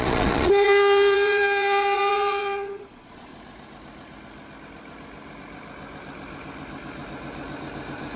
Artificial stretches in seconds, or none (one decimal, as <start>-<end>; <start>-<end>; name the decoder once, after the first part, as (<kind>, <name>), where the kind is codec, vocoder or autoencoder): 0.0-3.3 (vocoder, Vocos)